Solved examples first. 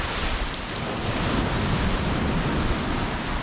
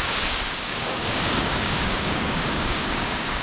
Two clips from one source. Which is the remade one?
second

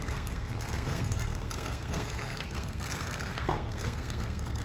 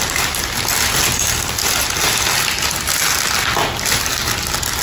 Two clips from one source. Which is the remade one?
first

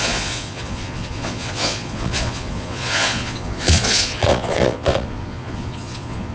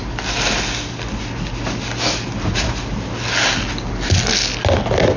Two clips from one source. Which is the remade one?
first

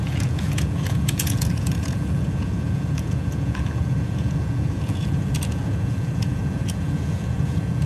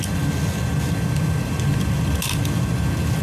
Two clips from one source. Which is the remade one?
first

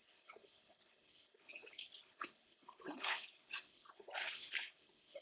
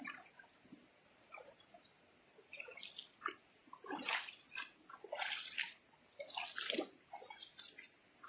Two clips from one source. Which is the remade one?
first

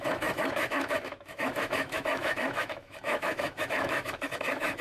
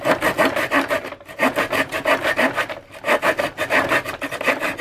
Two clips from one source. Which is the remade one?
first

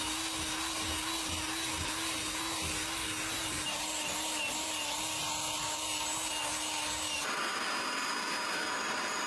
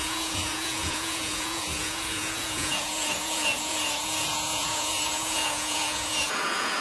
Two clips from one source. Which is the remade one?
second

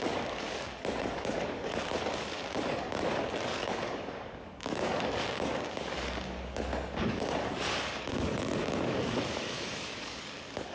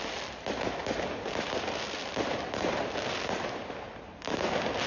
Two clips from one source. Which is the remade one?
first